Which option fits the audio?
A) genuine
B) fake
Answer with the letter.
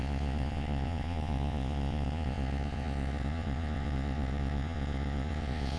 B